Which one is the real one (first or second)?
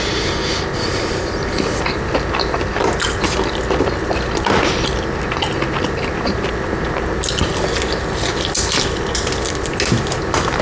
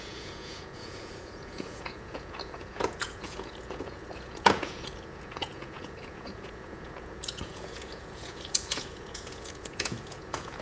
first